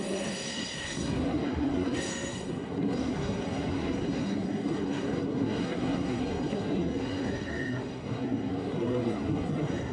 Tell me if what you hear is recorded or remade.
remade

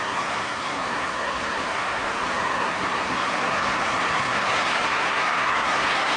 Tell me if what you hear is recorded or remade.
remade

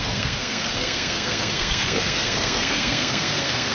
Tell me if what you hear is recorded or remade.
remade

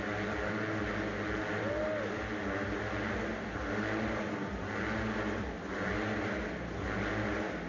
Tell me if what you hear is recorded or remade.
recorded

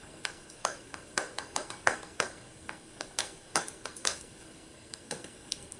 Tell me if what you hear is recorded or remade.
remade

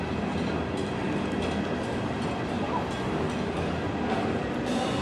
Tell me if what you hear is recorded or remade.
recorded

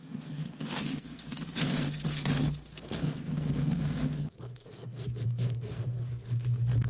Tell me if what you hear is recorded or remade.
remade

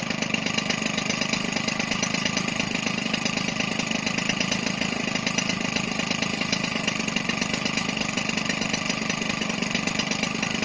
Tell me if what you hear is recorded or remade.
recorded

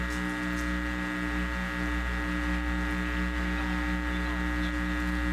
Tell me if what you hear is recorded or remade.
recorded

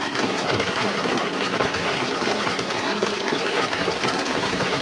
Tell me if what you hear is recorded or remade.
remade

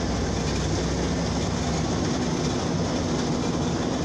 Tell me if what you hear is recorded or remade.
recorded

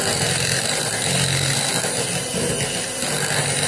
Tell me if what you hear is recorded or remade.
recorded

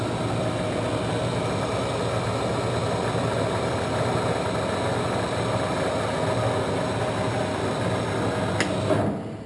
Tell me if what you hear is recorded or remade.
recorded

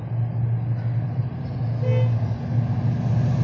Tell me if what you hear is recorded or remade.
recorded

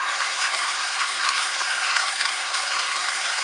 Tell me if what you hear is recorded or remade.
remade